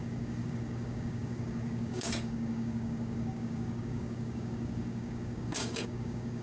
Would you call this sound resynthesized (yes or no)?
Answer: yes